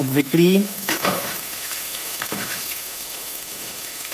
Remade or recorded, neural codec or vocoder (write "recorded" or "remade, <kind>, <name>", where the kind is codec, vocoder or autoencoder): remade, autoencoder, DAC-VAE